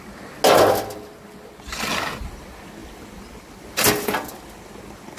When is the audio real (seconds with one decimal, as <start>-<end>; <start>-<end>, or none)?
0.0-5.2